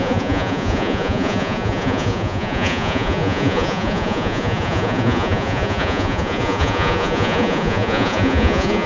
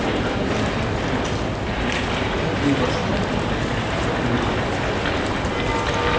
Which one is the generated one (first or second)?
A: first